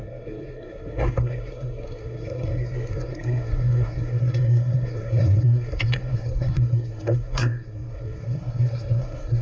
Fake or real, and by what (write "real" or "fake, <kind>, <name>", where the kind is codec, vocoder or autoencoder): fake, codec, SNAC